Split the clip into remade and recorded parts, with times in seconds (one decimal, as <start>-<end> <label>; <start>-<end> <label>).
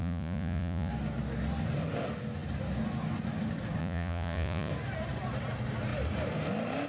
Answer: 0.0-0.9 remade; 0.9-3.8 recorded; 3.8-4.7 remade; 4.7-6.9 recorded